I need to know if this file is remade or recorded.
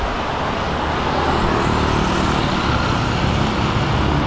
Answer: recorded